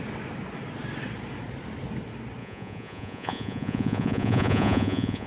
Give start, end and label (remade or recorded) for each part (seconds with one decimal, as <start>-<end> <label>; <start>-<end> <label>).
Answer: 0.0-2.4 recorded; 2.4-5.3 remade